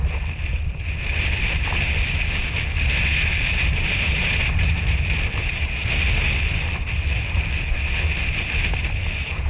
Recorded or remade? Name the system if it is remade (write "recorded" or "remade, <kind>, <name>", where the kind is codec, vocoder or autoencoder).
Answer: recorded